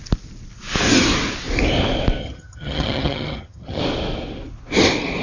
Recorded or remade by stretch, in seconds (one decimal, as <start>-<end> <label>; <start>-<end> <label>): 0.0-2.2 recorded; 2.2-3.8 remade; 3.8-5.2 recorded